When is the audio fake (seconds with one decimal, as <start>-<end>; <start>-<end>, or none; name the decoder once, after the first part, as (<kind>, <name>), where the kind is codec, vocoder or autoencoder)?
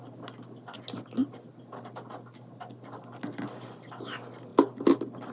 none